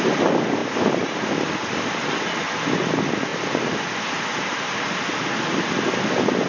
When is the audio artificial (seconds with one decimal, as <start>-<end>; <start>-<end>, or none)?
none